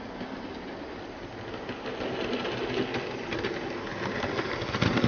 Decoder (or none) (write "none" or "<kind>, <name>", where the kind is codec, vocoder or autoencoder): none